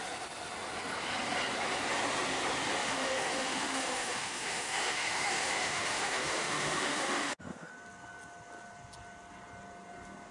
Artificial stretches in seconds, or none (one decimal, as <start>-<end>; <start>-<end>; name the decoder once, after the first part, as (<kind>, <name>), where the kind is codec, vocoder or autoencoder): 2.8-7.7 (autoencoder, DAC-VAE)